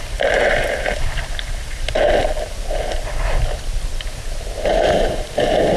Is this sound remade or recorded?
recorded